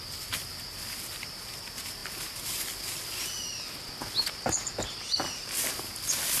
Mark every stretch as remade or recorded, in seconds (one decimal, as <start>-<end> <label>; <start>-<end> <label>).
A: 0.0-6.4 recorded